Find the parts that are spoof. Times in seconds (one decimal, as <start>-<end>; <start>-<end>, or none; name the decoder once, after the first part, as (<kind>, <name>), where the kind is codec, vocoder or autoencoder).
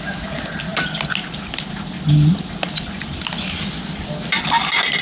none